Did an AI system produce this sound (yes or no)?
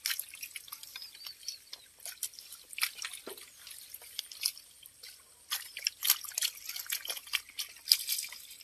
no